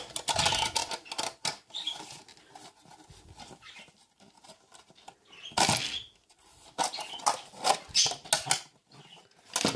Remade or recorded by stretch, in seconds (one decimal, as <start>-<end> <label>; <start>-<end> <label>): 0.0-9.8 recorded